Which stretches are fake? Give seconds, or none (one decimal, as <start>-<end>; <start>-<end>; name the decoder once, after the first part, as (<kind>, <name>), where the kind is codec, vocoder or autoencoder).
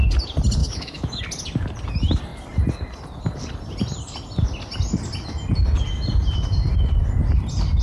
0.6-1.2 (autoencoder, DAC-VAE)